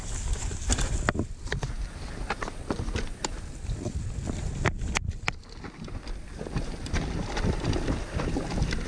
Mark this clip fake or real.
real